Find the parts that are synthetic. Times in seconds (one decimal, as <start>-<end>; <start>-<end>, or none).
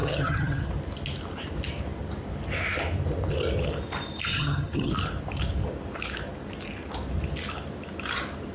0.0-0.7; 4.3-4.9